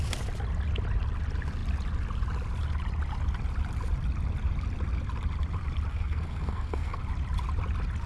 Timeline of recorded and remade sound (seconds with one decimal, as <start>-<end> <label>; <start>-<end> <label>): 0.0-5.9 recorded; 5.9-7.0 remade; 7.0-8.1 recorded